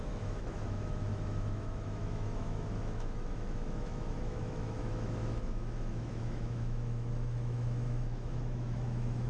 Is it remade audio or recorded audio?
remade